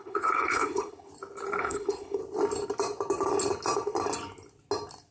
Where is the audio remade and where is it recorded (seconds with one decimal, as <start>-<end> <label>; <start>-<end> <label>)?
0.0-1.1 remade; 1.1-1.6 recorded; 1.6-2.2 remade; 2.2-5.1 recorded

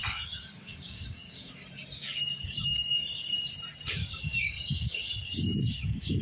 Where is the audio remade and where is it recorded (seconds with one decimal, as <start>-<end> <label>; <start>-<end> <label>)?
0.0-1.6 remade; 1.6-2.0 recorded; 2.0-3.4 remade; 3.4-4.0 recorded; 4.0-6.2 remade